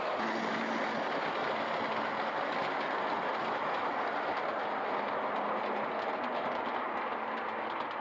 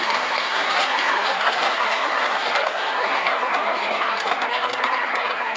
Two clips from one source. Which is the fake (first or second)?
second